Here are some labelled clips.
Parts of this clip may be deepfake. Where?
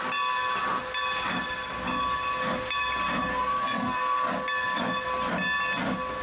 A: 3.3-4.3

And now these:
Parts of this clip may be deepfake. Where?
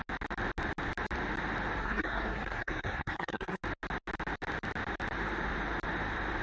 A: 1.8-3.6